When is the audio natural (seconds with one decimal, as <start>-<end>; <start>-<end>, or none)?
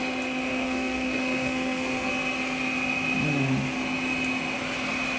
0.0-0.5; 2.1-5.2